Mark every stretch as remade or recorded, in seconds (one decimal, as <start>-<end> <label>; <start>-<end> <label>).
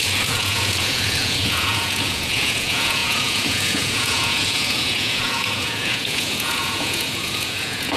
0.0-8.0 remade